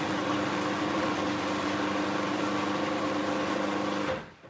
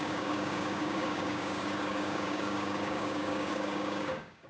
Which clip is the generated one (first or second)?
second